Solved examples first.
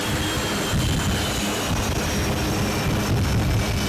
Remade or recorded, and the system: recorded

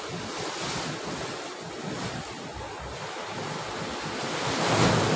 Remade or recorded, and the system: recorded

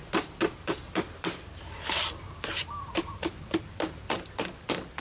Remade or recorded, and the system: remade, vocoder, BigVGAN v2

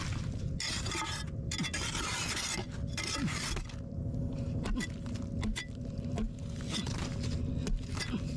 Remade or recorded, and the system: recorded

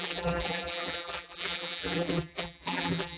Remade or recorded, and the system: remade, vocoder, BigVGAN v2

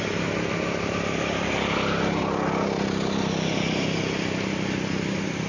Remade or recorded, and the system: recorded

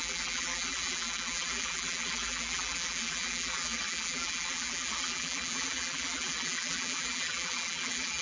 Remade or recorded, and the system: remade, vocoder, BigVGAN v2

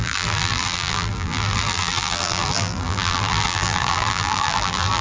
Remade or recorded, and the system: remade, vocoder, BigVGAN v2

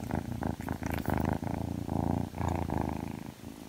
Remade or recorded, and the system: remade, vocoder, BigVGAN v2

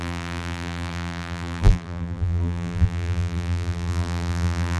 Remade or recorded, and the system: remade, vocoder, BigVGAN v2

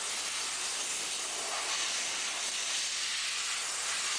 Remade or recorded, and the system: recorded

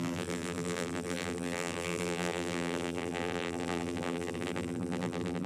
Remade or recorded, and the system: remade, vocoder, BigVGAN v2